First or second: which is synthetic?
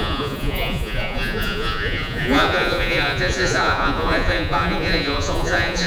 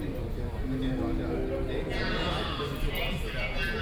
first